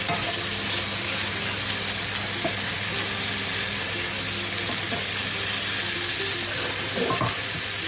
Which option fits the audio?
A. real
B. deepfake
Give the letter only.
A